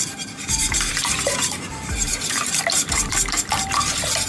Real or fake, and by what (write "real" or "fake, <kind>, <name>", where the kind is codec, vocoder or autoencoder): fake, vocoder, BigVGAN v2